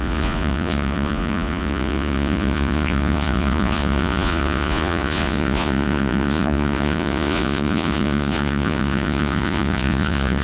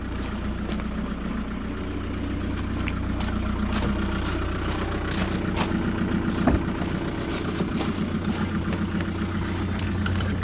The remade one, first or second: first